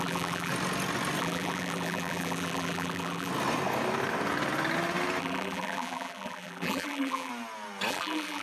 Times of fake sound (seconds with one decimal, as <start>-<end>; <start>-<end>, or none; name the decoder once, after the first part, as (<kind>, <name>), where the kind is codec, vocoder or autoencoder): 0.0-0.5 (vocoder, BigVGAN v2); 1.2-3.3; 5.2-7.3; 7.9-8.4